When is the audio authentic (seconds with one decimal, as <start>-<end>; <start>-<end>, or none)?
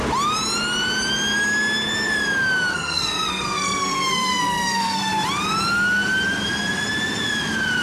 0.0-2.7; 5.1-7.8